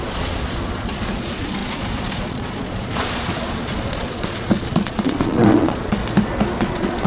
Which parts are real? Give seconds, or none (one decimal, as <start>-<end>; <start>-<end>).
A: 6.0-6.6